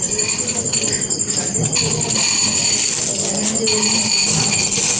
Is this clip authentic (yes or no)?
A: yes